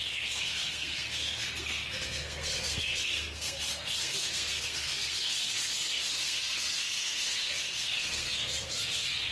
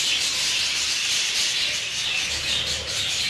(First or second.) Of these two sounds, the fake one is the first